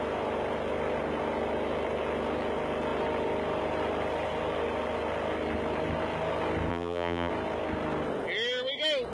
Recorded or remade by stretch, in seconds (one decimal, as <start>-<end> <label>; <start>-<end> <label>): 0.0-6.7 recorded; 6.7-7.3 remade; 7.3-9.1 recorded